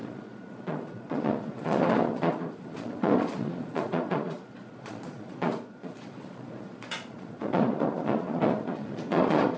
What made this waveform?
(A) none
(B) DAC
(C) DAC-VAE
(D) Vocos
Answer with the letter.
D